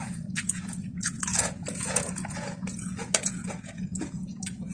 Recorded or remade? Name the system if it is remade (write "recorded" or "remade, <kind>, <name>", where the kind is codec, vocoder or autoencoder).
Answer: remade, vocoder, Vocos